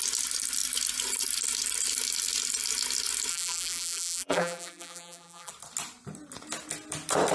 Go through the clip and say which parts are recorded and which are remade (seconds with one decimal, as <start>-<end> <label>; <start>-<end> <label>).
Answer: 0.0-3.3 recorded; 3.3-5.5 remade; 5.5-7.3 recorded

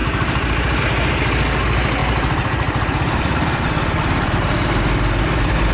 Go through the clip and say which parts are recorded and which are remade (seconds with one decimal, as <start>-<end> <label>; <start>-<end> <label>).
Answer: 0.0-0.8 remade; 0.8-2.0 recorded; 2.0-5.7 remade